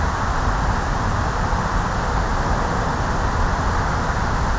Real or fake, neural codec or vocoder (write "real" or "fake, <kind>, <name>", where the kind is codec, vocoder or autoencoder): real